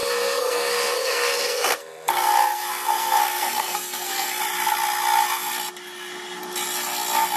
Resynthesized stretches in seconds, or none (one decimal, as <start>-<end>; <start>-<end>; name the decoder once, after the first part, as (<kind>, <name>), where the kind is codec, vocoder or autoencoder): 0.0-4.4 (codec, SNAC)